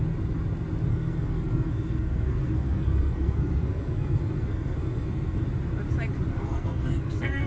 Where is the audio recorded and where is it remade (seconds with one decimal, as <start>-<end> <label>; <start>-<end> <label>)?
0.0-0.9 recorded; 0.9-5.4 remade; 5.4-6.3 recorded; 6.3-7.5 remade